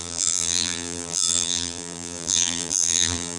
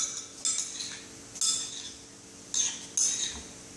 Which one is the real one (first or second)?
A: second